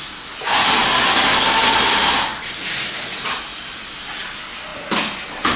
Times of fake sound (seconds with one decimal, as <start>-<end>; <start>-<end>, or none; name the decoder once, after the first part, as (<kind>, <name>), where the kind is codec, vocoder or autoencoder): none